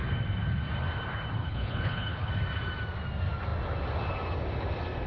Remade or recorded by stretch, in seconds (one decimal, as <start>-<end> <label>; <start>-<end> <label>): 0.0-1.4 recorded; 1.4-2.3 remade; 2.3-5.1 recorded